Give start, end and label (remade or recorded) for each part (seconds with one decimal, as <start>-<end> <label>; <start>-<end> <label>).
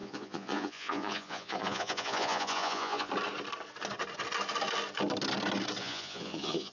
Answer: 0.0-3.1 remade; 3.1-5.8 recorded; 5.8-6.7 remade